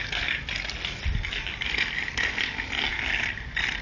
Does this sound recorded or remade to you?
recorded